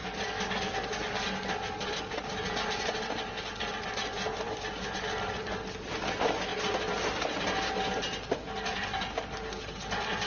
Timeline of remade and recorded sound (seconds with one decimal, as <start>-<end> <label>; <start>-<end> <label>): 0.0-10.3 recorded